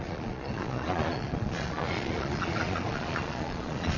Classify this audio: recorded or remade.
remade